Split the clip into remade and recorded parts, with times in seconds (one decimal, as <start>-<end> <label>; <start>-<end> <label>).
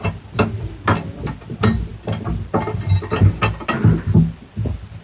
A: 0.0-5.0 recorded